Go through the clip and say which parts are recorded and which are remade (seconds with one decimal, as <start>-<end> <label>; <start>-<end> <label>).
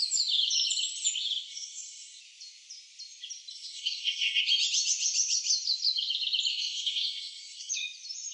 0.0-1.5 recorded; 1.5-2.2 remade; 2.2-3.5 recorded; 3.5-4.4 remade; 4.4-6.5 recorded; 6.5-7.7 remade; 7.7-8.3 recorded